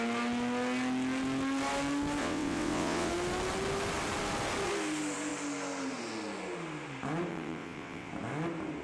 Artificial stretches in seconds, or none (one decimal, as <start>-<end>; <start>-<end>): 2.2-3.1; 7.3-8.1